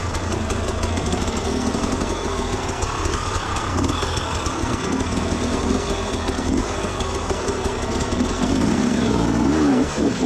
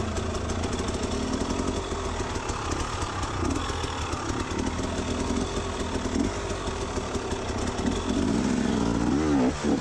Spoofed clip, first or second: first